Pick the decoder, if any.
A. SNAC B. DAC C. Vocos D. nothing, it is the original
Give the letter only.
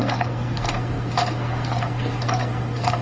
A